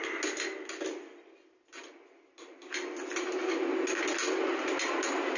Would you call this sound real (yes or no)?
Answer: yes